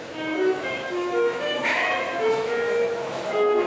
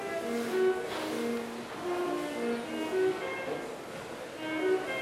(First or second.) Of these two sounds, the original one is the second